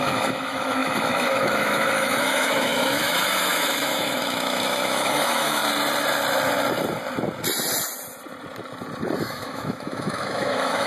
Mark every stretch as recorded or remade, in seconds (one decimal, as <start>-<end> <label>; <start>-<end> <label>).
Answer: 0.0-5.6 remade; 5.6-9.2 recorded; 9.2-10.9 remade